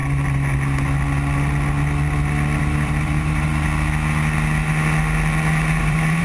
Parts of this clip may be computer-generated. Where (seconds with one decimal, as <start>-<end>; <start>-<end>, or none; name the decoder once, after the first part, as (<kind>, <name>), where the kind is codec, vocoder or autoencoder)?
2.6-3.5 (vocoder, BigVGAN v2); 5.8-6.2

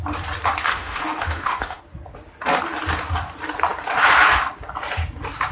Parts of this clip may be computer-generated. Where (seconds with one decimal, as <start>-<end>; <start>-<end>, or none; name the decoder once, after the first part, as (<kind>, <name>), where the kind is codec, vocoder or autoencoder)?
0.7-1.8 (autoencoder, DAC-VAE)

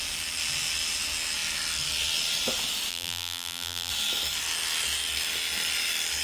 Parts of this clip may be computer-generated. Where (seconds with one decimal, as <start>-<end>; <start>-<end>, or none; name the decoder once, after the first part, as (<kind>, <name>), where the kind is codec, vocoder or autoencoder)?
2.9-3.9 (vocoder, BigVGAN v2)

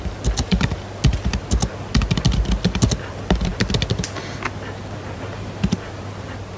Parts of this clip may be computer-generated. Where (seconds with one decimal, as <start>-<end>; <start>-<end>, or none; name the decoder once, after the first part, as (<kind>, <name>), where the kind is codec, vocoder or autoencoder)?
none

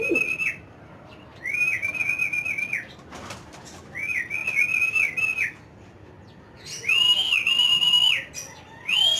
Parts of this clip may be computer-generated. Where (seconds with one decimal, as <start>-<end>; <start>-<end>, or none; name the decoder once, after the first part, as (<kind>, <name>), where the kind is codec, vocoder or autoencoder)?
none

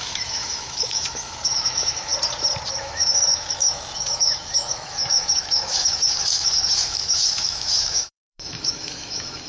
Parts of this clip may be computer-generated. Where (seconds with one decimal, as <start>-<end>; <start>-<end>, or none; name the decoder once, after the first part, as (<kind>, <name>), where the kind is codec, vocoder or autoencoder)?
0.0-2.1 (autoencoder, DAC-VAE); 2.8-9.5

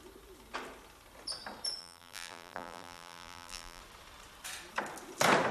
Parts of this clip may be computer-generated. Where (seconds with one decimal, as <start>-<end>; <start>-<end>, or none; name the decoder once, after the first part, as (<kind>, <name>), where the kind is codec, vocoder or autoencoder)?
1.8-3.8 (vocoder, BigVGAN v2)